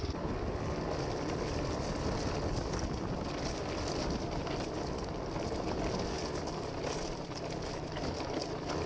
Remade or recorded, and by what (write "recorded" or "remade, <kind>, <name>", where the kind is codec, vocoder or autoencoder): recorded